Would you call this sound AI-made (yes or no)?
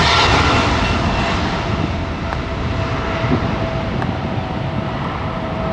no